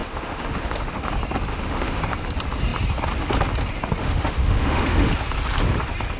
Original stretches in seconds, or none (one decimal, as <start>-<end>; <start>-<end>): 1.1-1.5; 2.0-4.0; 5.1-6.2